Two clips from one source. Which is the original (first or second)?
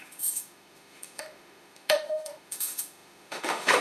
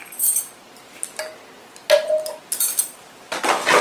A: second